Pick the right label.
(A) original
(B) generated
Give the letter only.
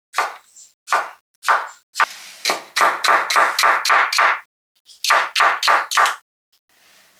A